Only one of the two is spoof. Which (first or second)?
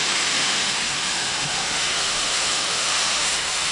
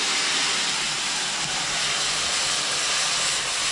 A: first